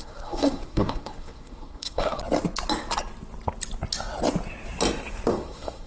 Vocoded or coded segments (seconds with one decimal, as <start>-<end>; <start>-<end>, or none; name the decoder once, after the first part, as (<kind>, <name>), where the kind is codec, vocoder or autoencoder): 0.0-2.2 (codec, SNAC); 5.3-5.9